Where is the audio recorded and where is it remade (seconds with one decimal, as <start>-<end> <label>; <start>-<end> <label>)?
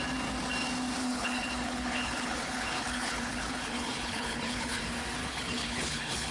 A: 0.0-1.0 recorded; 1.0-4.8 remade; 4.8-5.2 recorded; 5.2-6.3 remade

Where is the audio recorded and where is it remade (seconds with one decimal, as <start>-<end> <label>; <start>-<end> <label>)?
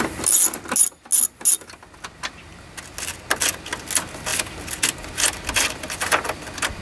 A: 0.0-6.8 recorded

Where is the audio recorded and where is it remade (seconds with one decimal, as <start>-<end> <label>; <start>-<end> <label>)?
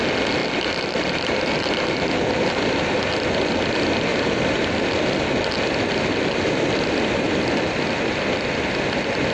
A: 0.0-0.4 recorded; 0.4-2.8 remade; 2.8-9.3 recorded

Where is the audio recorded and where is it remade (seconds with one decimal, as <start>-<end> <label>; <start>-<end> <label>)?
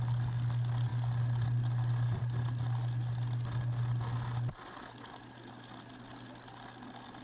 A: 0.0-7.2 recorded